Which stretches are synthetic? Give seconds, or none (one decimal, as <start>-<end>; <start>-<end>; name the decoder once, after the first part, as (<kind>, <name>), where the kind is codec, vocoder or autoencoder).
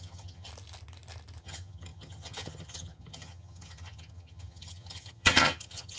0.0-0.5 (vocoder, HiFi-GAN); 1.4-6.0